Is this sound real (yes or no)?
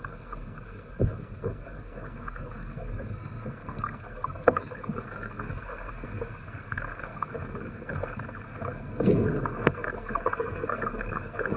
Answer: no